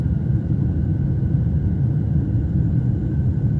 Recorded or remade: recorded